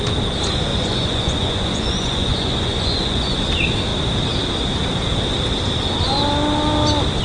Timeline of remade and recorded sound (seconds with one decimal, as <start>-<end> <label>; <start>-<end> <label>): 0.0-0.7 recorded; 0.7-3.4 remade; 3.4-7.2 recorded